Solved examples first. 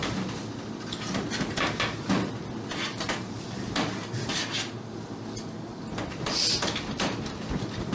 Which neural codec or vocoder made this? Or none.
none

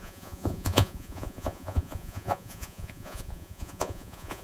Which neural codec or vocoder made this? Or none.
vocoder, Vocos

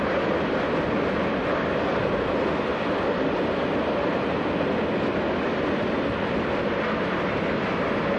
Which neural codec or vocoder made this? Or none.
none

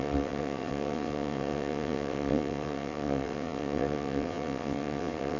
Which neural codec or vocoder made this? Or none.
vocoder, WaveNeXt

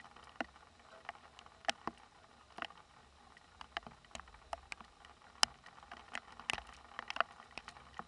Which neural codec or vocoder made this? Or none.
none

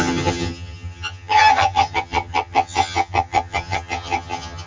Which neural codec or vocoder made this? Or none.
vocoder, HiFi-GAN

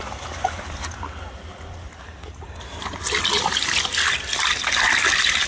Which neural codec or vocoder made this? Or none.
none